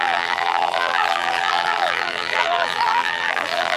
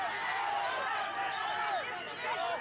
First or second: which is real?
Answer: second